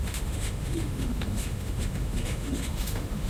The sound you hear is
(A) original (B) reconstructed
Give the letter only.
B